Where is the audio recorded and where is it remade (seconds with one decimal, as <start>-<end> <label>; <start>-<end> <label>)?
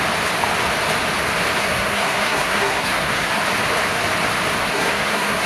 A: 0.0-1.6 recorded; 1.6-3.4 remade; 3.4-4.6 recorded; 4.6-5.5 remade